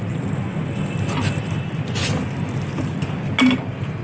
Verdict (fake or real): real